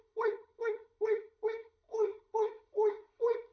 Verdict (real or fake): fake